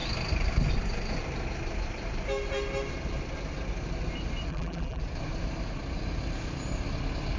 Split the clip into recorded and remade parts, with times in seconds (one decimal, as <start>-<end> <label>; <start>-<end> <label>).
0.0-4.5 recorded; 4.5-5.0 remade; 5.0-7.4 recorded